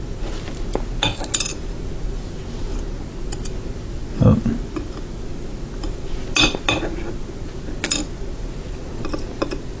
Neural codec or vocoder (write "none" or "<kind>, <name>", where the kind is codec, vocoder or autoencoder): none